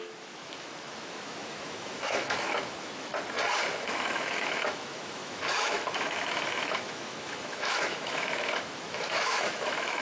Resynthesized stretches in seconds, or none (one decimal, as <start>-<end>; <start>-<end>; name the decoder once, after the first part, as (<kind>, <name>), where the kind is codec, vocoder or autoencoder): 0.0-3.1 (autoencoder, DAC-VAE); 3.7-10.0